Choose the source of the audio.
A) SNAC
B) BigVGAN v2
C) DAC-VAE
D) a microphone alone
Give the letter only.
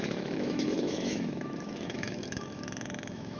C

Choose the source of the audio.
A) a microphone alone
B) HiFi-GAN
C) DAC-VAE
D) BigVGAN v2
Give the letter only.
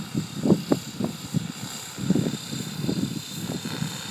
A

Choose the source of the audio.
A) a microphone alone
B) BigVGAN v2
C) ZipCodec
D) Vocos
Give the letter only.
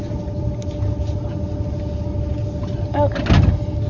A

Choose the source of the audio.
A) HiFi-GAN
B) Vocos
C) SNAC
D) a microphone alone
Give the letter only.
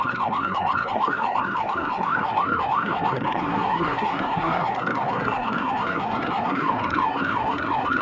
C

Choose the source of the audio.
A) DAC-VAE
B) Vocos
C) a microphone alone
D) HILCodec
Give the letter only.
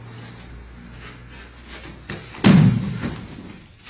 C